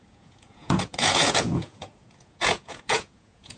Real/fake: fake